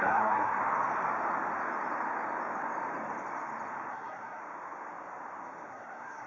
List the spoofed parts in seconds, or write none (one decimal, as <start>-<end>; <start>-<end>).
0.0-0.6; 3.9-4.4; 5.7-6.3